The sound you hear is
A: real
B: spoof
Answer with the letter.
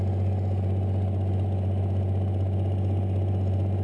A